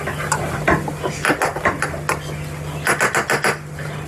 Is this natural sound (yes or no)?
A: yes